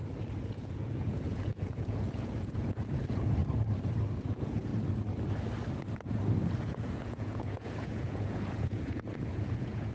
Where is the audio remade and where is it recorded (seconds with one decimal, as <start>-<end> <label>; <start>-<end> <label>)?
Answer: 0.0-0.5 recorded; 0.5-3.4 remade; 3.4-4.1 recorded; 4.1-4.7 remade; 4.7-6.6 recorded; 6.6-9.9 remade